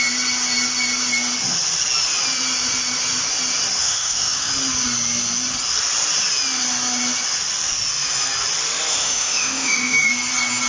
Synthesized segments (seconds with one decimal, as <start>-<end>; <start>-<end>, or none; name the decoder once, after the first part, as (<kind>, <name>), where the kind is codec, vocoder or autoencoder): 3.8-4.5 (autoencoder, DAC-VAE); 8.9-10.1